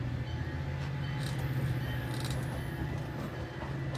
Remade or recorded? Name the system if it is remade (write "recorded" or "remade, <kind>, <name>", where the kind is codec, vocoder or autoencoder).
recorded